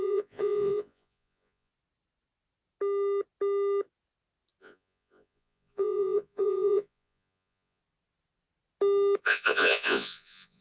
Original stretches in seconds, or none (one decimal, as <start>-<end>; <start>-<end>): 1.7-4.6; 7.8-9.2